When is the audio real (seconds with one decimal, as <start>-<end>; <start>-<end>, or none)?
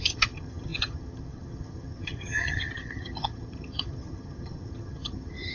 none